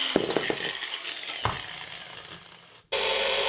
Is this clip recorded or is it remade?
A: recorded